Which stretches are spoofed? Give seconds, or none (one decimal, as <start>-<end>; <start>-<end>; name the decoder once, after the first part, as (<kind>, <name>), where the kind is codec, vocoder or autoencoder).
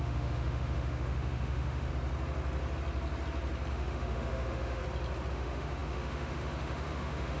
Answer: 0.0-1.9 (autoencoder, DAC-VAE); 3.7-4.8; 5.3-7.4